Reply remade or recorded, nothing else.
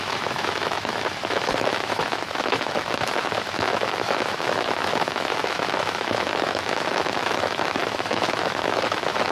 remade